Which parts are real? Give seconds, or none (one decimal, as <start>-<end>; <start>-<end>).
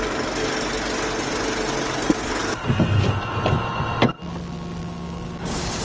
0.0-4.8